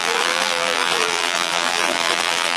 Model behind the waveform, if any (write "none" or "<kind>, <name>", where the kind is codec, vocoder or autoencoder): vocoder, BigVGAN v2